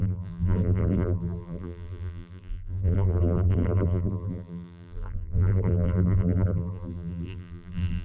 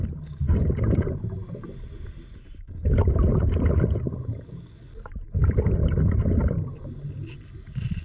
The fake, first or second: first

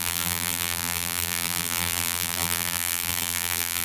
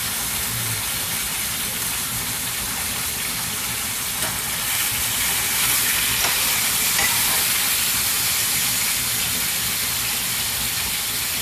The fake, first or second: first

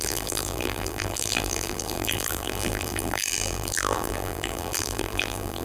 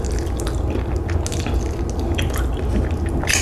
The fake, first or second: first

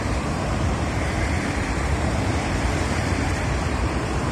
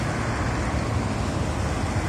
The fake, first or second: first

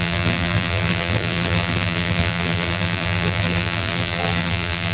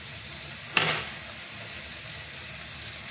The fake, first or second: first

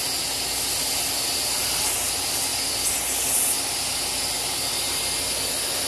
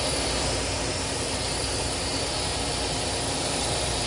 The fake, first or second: second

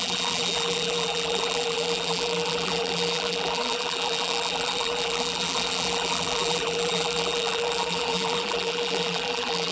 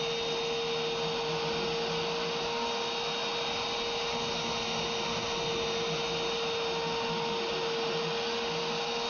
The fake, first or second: first